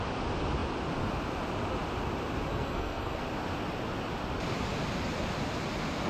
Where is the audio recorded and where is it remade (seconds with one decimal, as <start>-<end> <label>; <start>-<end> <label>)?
0.0-2.5 recorded; 2.5-3.2 remade; 3.2-6.1 recorded